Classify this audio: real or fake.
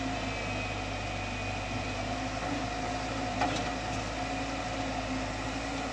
real